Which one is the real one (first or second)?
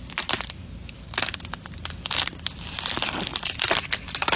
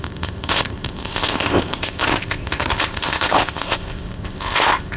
first